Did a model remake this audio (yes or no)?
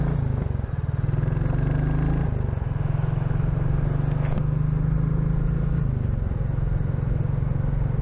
no